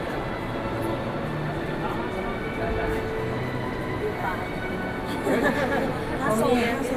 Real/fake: real